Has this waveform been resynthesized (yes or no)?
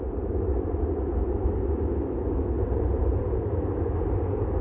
no